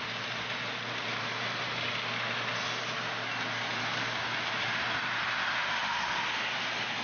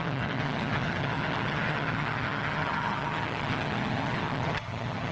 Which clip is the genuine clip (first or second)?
first